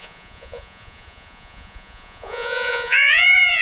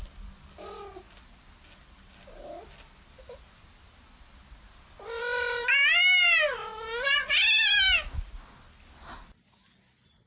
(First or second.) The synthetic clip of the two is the first